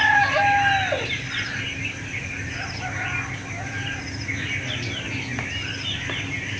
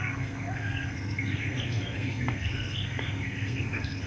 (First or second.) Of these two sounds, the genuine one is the first